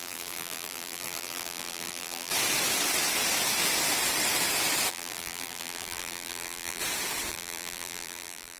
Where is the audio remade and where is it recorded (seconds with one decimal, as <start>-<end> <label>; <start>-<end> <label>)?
0.0-2.3 remade; 2.3-4.9 recorded; 4.9-6.8 remade; 6.8-7.3 recorded; 7.3-8.6 remade